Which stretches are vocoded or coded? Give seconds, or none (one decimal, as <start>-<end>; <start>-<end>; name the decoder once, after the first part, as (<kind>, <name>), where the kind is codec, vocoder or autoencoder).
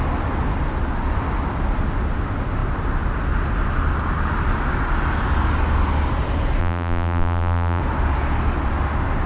6.6-7.8 (vocoder, BigVGAN v2)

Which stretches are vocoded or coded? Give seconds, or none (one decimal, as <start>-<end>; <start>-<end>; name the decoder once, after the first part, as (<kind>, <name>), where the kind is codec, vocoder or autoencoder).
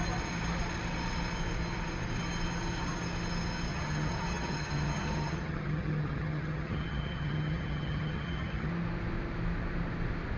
3.7-8.7 (vocoder, HiFi-GAN)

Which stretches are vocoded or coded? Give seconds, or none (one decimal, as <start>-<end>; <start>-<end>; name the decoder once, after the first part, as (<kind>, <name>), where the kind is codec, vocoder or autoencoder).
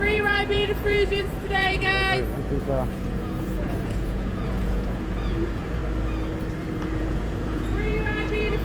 0.0-1.9 (vocoder, Vocos); 2.9-5.8; 6.8-8.6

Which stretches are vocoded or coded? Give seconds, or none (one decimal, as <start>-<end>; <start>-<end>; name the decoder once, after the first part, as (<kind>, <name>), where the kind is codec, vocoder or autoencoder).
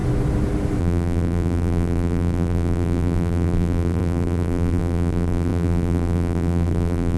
0.8-7.2 (vocoder, BigVGAN v2)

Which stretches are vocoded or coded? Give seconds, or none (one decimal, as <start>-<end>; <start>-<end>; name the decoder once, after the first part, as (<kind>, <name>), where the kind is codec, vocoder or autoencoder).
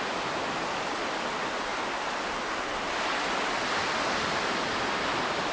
0.0-1.7 (vocoder, BigVGAN v2); 4.8-5.5